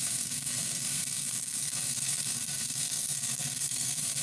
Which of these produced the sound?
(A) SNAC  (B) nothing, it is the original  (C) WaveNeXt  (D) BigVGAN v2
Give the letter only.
A